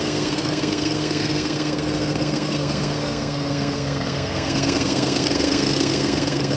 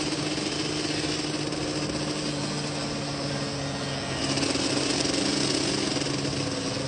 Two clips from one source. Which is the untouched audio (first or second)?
second